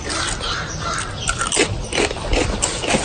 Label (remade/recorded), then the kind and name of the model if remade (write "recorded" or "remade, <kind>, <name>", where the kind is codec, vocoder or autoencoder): recorded